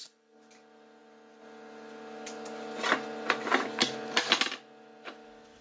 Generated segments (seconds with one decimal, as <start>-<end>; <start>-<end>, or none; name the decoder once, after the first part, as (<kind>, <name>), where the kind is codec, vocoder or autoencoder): none